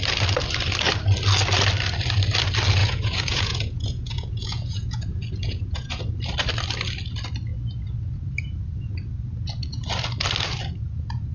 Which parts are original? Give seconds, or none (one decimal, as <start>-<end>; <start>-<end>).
0.0-2.8; 6.0-11.3